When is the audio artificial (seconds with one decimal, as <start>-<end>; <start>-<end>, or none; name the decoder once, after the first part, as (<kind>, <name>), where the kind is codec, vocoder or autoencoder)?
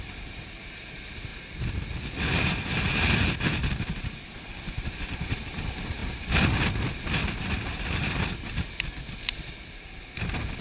none